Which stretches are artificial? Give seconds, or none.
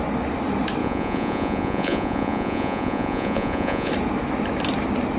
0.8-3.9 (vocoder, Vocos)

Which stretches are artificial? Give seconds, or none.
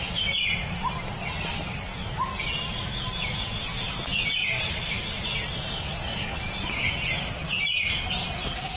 3.2-4.0 (vocoder, Vocos); 6.1-7.1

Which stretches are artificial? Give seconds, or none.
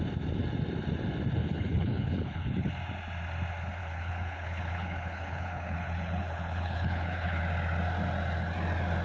1.4-2.7 (codec, HILCodec); 3.8-7.4